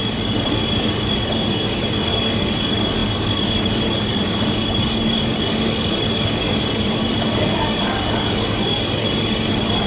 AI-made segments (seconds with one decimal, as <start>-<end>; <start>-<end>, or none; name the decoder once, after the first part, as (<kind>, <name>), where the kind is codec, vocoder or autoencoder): 0.0-9.9 (codec, DAC)